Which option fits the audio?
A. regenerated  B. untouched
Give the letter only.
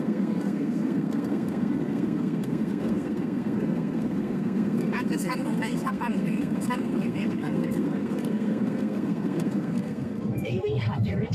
A